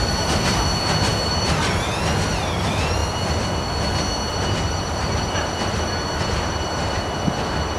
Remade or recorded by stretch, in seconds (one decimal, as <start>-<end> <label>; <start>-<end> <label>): 0.0-7.8 recorded